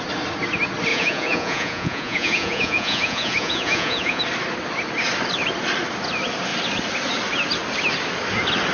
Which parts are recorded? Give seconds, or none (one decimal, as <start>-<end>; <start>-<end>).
0.0-0.9; 4.2-8.7